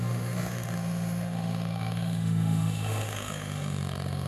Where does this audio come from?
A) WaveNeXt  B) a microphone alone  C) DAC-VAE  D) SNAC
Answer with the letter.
C